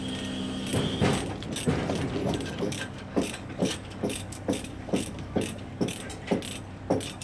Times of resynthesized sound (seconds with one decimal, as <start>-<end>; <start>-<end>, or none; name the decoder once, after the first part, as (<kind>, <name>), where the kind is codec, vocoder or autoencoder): 2.2-6.1 (codec, DAC)